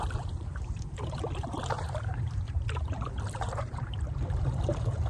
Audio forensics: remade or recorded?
remade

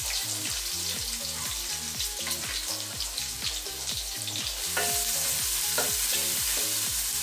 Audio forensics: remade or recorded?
recorded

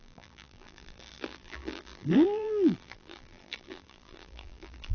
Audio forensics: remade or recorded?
remade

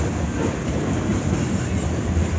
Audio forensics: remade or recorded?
recorded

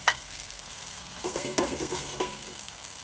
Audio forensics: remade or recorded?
remade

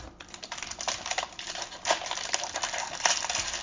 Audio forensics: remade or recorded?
recorded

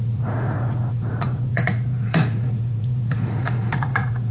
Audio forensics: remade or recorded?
remade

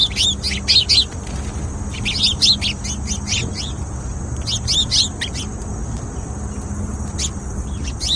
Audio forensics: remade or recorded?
recorded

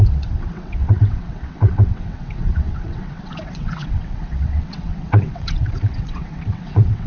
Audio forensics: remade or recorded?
remade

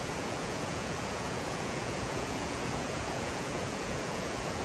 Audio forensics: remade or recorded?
remade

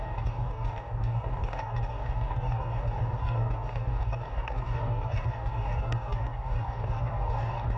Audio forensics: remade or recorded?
remade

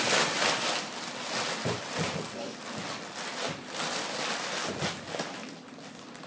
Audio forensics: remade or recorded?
recorded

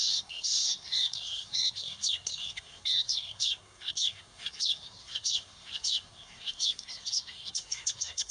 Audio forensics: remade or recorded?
remade